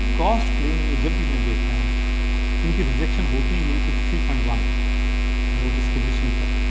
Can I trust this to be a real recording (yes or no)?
yes